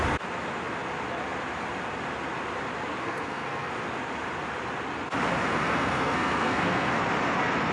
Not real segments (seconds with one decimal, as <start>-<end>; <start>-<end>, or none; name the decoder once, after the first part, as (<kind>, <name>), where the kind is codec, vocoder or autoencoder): 3.0-3.7 (codec, SNAC); 5.5-7.0